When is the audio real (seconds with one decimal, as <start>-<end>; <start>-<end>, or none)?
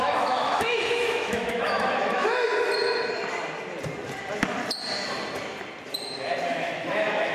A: 2.2-6.4